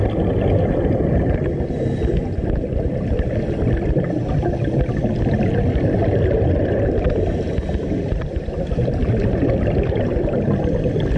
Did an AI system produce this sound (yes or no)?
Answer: no